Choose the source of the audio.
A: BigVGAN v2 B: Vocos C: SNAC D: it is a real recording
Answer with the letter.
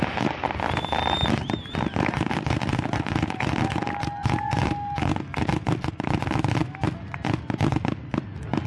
D